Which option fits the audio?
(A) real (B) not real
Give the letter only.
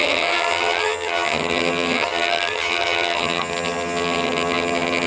B